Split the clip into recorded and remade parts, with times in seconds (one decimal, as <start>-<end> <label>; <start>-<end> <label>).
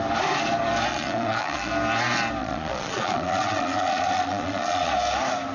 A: 0.0-0.9 recorded; 0.9-1.7 remade; 1.7-2.4 recorded; 2.4-4.9 remade; 4.9-5.5 recorded